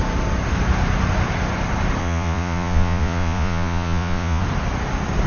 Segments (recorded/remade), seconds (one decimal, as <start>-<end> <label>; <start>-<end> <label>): 0.0-2.0 recorded; 2.0-4.4 remade; 4.4-5.3 recorded